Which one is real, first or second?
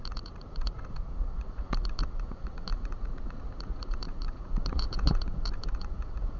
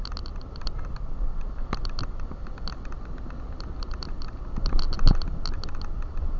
second